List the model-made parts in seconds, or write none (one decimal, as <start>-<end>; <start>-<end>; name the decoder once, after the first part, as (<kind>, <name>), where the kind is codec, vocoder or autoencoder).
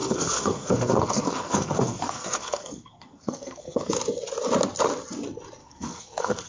0.0-3.9 (codec, SNAC); 5.6-6.5